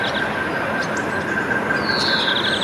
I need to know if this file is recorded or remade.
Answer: recorded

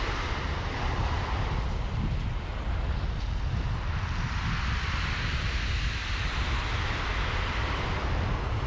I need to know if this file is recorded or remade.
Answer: recorded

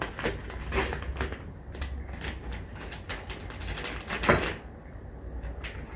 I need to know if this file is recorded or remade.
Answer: recorded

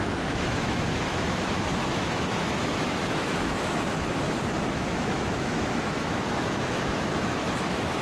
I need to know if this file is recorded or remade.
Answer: remade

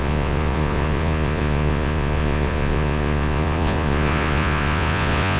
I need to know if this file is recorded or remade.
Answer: remade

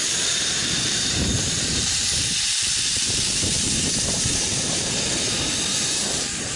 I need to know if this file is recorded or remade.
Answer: remade